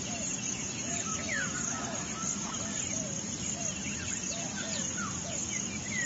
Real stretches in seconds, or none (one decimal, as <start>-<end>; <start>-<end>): 1.1-4.8; 5.4-6.1